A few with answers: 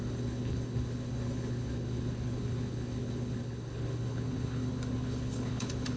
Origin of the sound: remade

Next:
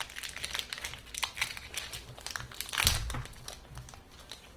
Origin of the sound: recorded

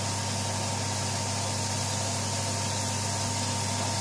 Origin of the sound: recorded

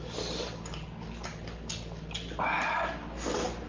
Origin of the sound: recorded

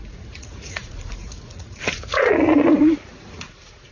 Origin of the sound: remade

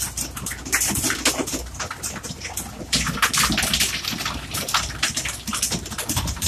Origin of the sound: recorded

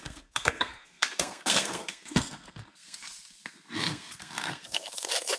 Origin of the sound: remade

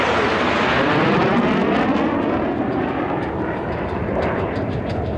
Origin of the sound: recorded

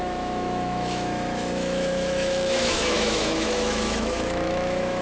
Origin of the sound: remade